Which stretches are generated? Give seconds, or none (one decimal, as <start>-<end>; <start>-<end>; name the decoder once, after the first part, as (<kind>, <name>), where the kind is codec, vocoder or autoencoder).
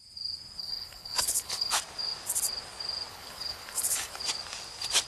0.6-1.8 (codec, HILCodec); 3.1-4.2